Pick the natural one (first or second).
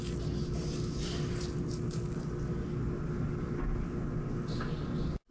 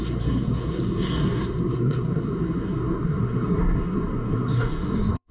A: first